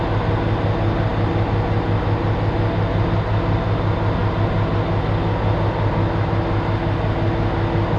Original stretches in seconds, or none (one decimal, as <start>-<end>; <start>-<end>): 0.0-8.0